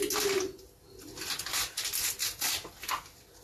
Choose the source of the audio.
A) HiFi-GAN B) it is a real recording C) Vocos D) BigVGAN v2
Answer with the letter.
B